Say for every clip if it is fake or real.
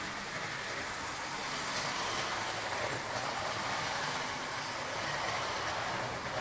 real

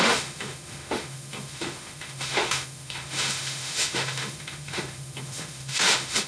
fake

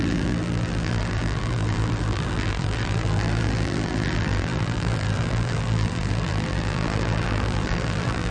fake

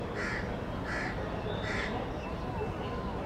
real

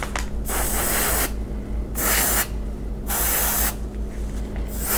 real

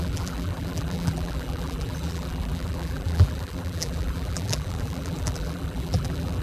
fake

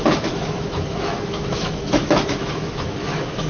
fake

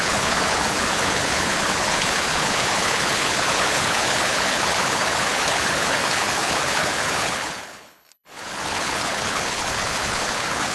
fake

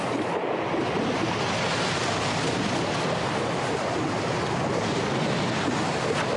real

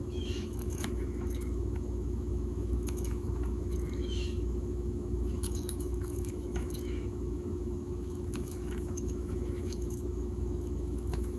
fake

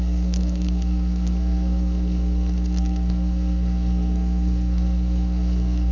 fake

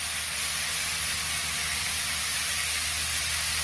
real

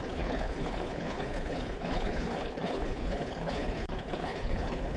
fake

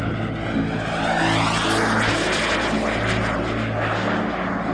real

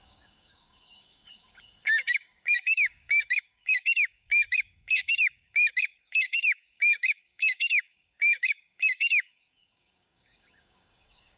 fake